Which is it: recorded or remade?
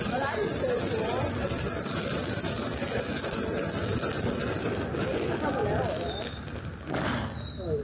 recorded